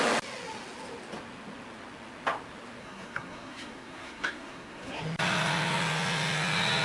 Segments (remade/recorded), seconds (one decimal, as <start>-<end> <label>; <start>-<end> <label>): 0.0-2.8 recorded; 2.8-5.0 remade; 5.0-6.8 recorded